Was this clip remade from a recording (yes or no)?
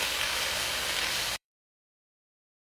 yes